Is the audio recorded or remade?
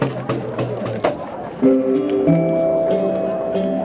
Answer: recorded